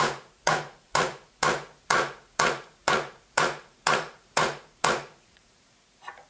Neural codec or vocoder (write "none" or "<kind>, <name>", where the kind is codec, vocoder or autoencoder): vocoder, Vocos